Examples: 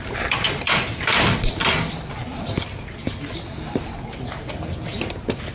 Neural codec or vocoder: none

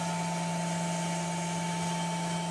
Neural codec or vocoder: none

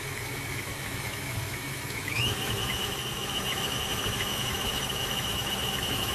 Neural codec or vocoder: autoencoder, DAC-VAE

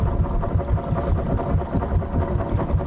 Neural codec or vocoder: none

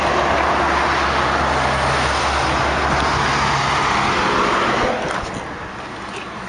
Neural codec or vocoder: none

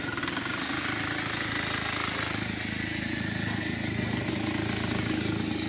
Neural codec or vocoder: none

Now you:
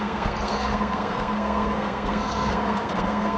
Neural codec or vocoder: codec, SNAC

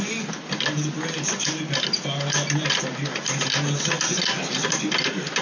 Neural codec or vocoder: none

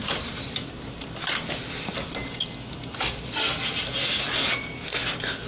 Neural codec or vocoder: none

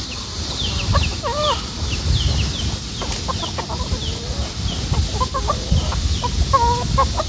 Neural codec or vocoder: none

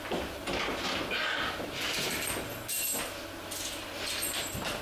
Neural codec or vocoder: none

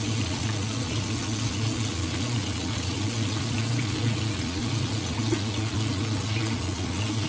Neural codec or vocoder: vocoder, Vocos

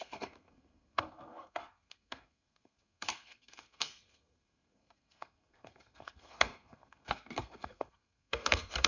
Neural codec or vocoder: codec, SNAC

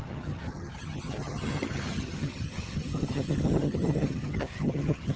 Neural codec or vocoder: vocoder, HiFi-GAN